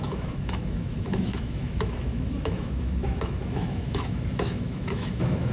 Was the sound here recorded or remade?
remade